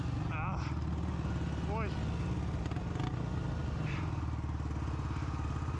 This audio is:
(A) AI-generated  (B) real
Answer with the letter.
B